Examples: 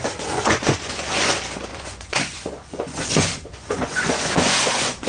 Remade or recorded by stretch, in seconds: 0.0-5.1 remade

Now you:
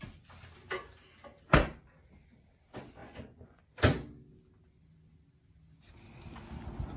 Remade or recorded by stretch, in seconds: 0.0-3.0 recorded; 3.0-3.6 remade; 3.6-7.0 recorded

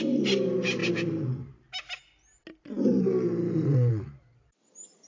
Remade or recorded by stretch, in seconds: 0.0-5.1 recorded

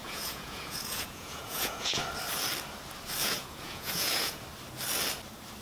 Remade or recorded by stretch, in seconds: 0.0-2.0 remade; 2.0-3.2 recorded; 3.2-4.4 remade; 4.4-5.6 recorded

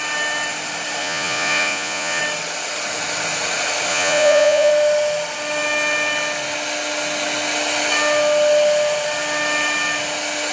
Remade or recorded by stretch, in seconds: 0.0-1.0 recorded; 1.0-2.2 remade; 2.2-3.9 recorded; 3.9-4.7 remade; 4.7-10.5 recorded

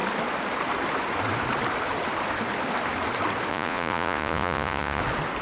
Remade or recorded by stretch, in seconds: 0.0-3.5 recorded; 3.5-5.0 remade; 5.0-5.4 recorded